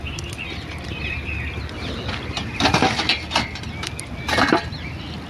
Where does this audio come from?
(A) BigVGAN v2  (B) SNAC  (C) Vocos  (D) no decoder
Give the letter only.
D